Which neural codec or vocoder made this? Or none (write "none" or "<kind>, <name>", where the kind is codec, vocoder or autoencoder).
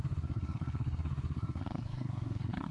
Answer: codec, SNAC